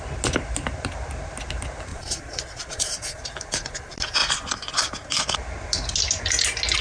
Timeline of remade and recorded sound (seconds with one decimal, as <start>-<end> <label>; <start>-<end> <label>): 0.0-1.9 recorded; 1.9-3.2 remade; 3.2-6.8 recorded